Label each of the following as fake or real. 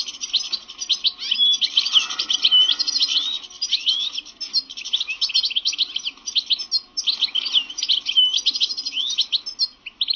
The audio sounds real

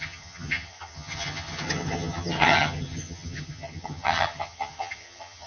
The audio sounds fake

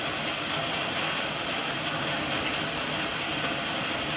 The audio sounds real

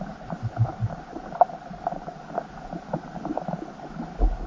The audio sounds real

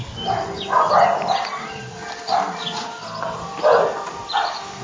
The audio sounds real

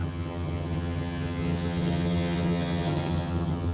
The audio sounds fake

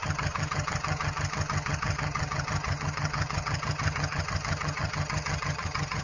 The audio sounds fake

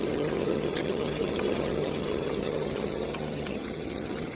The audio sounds fake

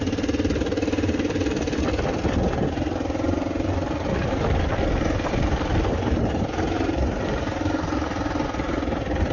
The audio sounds real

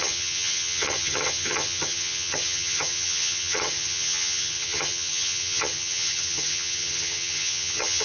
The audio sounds fake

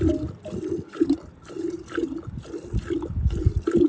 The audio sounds real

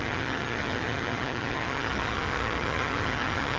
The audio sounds fake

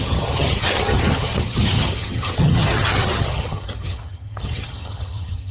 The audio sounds fake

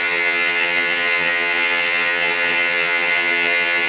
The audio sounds fake